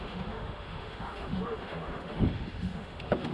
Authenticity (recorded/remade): remade